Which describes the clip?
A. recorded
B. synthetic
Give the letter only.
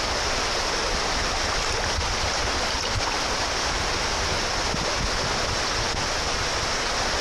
A